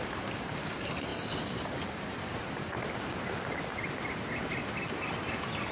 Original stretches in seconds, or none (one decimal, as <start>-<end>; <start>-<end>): 0.0-5.7